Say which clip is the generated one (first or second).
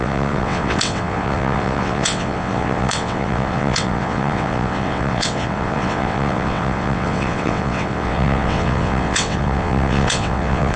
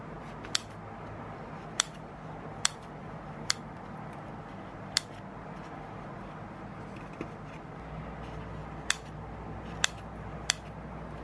first